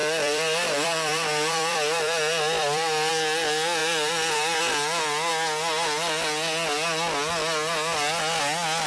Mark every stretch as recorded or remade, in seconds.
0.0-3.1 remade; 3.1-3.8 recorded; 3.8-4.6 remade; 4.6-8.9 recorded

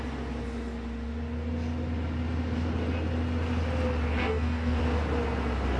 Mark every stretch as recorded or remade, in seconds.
0.0-4.2 recorded; 4.2-4.8 remade; 4.8-5.8 recorded

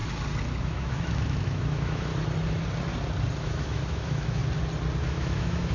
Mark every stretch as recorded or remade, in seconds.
0.0-0.6 recorded; 0.6-2.1 remade; 2.1-3.4 recorded; 3.4-4.4 remade; 4.4-5.0 recorded; 5.0-5.7 remade

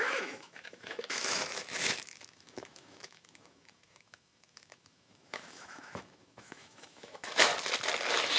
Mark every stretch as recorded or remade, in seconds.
0.0-7.5 remade; 7.5-8.4 recorded

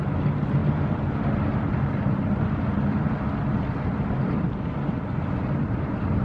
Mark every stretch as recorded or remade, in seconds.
0.0-6.2 recorded

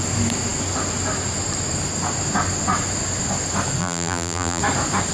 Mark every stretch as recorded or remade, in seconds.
0.0-3.8 recorded; 3.8-4.6 remade; 4.6-5.1 recorded

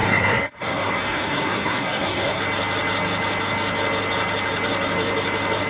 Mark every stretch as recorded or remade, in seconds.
0.0-2.4 remade; 2.4-5.7 recorded